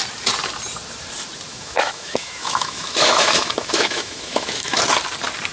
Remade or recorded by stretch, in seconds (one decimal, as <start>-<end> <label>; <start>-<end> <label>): 0.0-1.5 recorded; 1.5-4.8 remade; 4.8-5.5 recorded